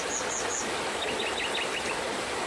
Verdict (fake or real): real